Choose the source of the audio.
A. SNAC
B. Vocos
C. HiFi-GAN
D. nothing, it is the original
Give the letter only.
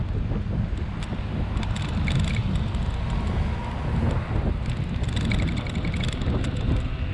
D